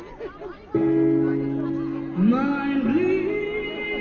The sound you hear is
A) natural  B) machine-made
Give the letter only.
A